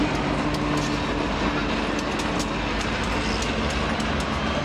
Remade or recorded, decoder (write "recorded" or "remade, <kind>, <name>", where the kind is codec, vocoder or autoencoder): recorded